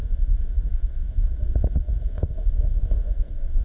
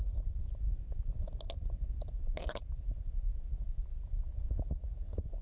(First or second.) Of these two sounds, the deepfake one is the first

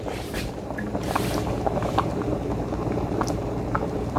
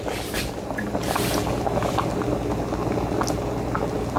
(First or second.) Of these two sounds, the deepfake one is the first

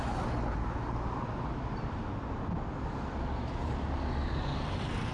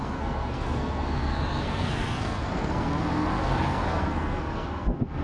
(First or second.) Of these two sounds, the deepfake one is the second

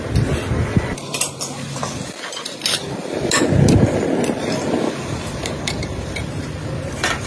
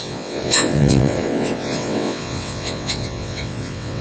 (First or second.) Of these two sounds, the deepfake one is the second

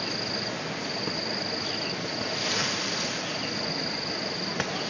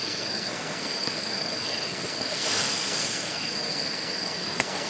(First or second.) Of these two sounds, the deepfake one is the second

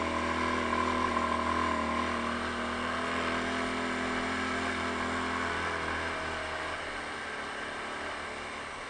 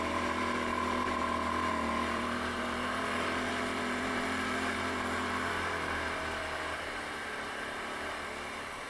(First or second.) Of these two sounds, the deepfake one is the second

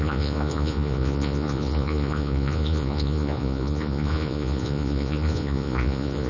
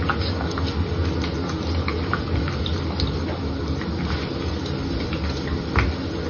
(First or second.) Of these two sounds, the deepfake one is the first